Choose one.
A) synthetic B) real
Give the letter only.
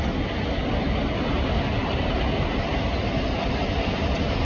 B